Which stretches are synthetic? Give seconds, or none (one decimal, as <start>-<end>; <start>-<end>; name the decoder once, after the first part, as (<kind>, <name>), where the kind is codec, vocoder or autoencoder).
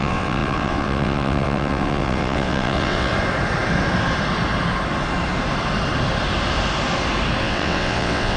0.0-3.1 (vocoder, WaveNeXt); 7.4-8.4